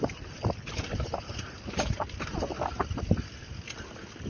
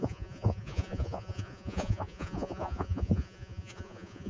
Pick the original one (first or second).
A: first